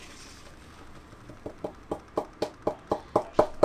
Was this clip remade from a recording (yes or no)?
no